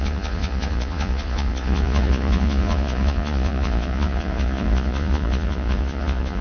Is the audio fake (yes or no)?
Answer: yes